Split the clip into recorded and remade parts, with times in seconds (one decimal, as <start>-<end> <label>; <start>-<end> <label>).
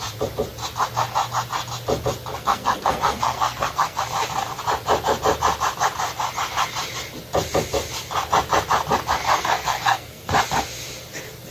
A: 0.0-2.3 recorded; 2.3-4.0 remade; 4.0-9.4 recorded; 9.4-10.3 remade; 10.3-11.5 recorded